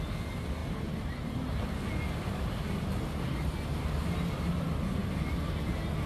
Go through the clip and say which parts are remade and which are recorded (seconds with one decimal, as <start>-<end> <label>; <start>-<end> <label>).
0.0-6.1 recorded